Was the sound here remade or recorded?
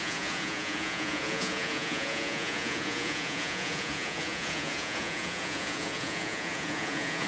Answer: remade